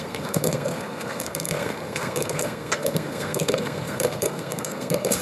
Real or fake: fake